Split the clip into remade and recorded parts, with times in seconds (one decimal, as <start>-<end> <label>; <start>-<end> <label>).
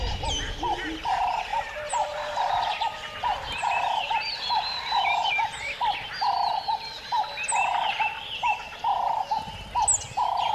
0.0-1.5 recorded; 1.5-4.5 remade; 4.5-10.5 recorded